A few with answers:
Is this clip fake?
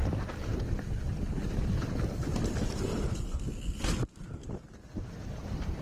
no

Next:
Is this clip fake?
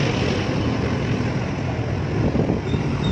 no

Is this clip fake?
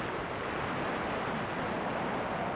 no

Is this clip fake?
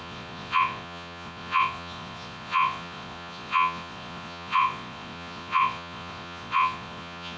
yes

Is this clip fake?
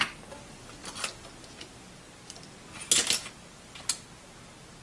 no